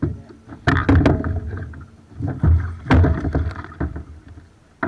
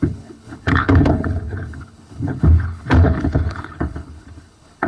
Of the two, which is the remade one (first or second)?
second